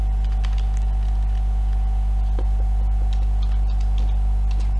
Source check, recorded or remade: recorded